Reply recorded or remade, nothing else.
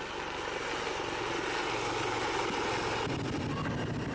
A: recorded